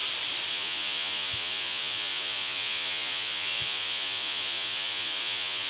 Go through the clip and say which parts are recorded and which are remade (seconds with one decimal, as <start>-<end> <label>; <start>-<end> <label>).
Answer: 0.0-0.5 recorded; 0.5-5.7 remade